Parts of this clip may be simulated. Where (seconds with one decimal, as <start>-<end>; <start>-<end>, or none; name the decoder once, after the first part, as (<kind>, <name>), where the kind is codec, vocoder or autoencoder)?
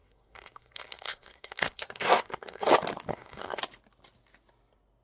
0.0-2.7 (codec, SNAC); 3.1-3.6